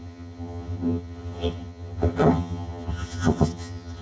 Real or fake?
fake